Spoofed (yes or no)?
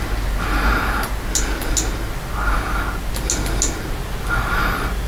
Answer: no